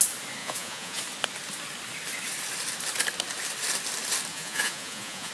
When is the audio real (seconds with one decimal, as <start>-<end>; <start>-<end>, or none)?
0.0-0.4; 1.0-4.3